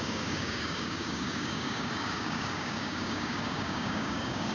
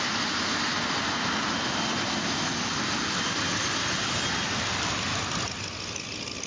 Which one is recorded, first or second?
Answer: second